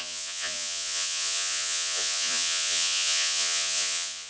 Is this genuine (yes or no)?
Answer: no